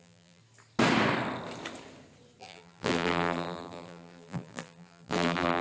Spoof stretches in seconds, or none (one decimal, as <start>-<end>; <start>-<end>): 0.0-0.4; 2.4-5.6